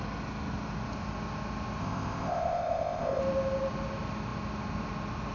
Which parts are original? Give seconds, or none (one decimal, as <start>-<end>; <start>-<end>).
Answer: 0.0-1.8; 3.2-5.3

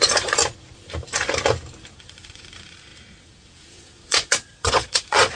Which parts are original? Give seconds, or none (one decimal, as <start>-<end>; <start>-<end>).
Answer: 0.4-1.9

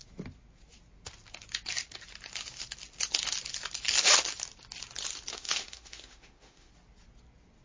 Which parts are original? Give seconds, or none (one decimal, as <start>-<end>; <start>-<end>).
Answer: 0.0-5.3; 6.7-7.6

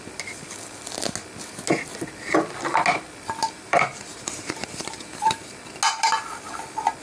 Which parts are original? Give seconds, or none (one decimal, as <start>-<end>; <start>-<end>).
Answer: 0.0-3.4; 5.6-7.0

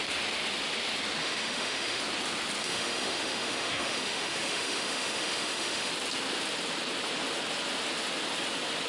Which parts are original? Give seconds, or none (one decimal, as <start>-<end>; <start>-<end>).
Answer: 0.0-1.2; 2.0-2.6; 5.9-8.9

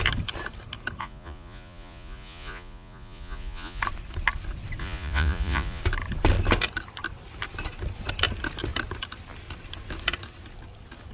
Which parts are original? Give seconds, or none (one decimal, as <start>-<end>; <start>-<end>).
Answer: 0.0-1.0; 3.8-4.8; 5.8-11.1

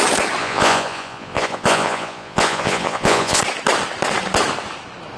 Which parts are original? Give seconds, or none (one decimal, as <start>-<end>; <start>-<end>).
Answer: 0.0-0.4; 3.4-5.2

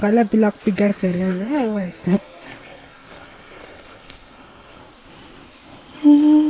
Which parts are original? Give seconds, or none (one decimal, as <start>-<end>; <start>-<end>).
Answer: 0.0-0.9; 4.8-6.5